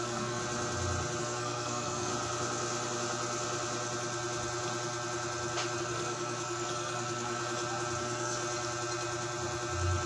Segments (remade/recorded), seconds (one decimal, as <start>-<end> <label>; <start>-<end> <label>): 0.0-0.4 remade; 0.4-1.2 recorded; 1.2-2.1 remade; 2.1-5.8 recorded; 5.8-7.4 remade; 7.4-8.0 recorded; 8.0-8.4 remade; 8.4-10.1 recorded